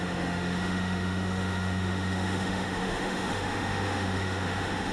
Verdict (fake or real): fake